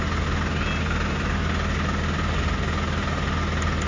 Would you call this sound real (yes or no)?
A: yes